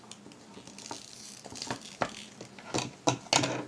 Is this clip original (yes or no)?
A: yes